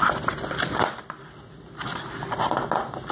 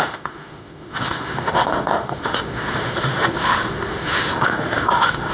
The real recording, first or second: first